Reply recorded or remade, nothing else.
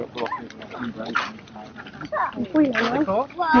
recorded